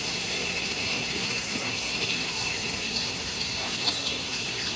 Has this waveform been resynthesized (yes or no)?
yes